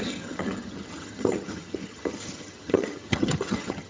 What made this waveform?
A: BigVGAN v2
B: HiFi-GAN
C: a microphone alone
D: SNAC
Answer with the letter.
B